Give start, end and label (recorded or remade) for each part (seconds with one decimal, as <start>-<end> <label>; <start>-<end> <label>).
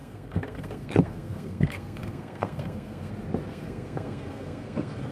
0.0-3.1 remade; 3.1-3.5 recorded; 3.5-5.1 remade